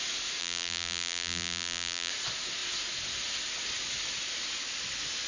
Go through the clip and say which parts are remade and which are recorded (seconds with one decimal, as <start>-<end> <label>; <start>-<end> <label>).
0.0-0.4 recorded; 0.4-2.1 remade; 2.1-5.3 recorded